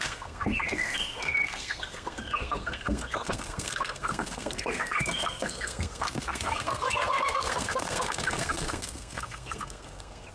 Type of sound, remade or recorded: remade